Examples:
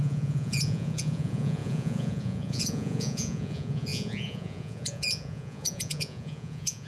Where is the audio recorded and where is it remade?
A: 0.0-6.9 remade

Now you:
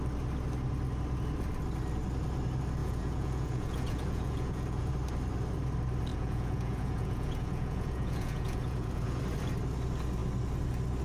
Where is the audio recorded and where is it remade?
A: 0.0-2.8 recorded; 2.8-4.9 remade; 4.9-6.1 recorded; 6.1-9.2 remade; 9.2-11.0 recorded

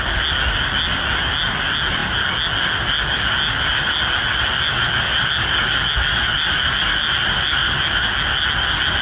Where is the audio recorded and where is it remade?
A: 0.0-9.0 recorded

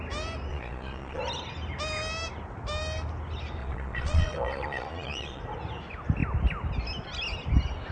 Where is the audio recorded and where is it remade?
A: 0.0-0.5 recorded; 0.5-1.2 remade; 1.2-3.6 recorded; 3.6-5.4 remade; 5.4-7.9 recorded

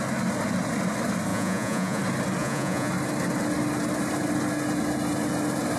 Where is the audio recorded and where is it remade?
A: 0.0-1.3 recorded; 1.3-2.0 remade; 2.0-2.4 recorded; 2.4-2.9 remade; 2.9-5.8 recorded